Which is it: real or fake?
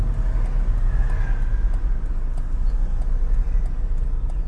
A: real